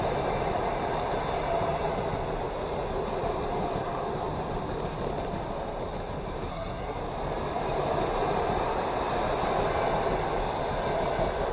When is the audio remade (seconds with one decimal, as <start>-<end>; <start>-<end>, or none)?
6.5-7.0